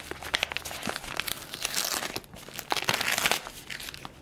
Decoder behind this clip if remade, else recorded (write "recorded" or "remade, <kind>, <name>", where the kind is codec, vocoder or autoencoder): recorded